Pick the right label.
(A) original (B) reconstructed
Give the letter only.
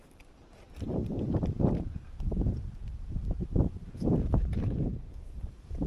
B